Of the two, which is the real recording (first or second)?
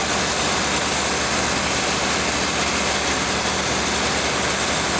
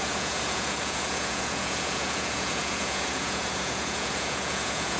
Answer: first